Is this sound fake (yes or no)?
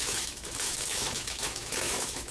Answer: yes